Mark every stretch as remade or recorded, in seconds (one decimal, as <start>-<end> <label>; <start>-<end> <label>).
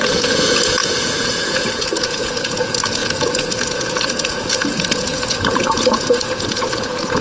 0.0-7.2 remade